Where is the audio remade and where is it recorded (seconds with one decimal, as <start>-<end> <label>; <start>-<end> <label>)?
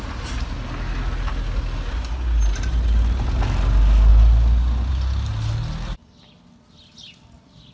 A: 0.0-7.7 recorded